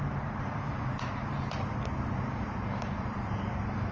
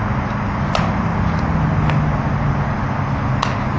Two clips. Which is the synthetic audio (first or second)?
first